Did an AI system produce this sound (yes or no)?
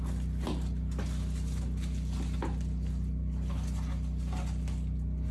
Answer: no